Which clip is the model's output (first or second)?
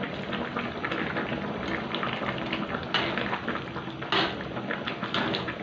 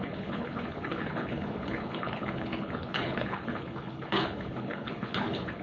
second